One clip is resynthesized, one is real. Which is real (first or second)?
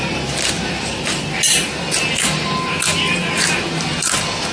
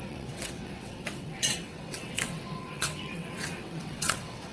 first